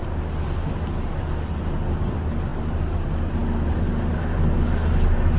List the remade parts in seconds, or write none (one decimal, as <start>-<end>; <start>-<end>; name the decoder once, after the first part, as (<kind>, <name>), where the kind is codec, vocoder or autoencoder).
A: 2.5-4.4 (vocoder, BigVGAN v2)